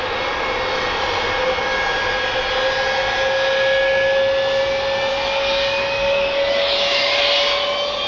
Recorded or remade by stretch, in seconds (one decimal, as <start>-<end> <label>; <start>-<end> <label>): 0.0-5.1 recorded; 5.1-7.2 remade; 7.2-8.1 recorded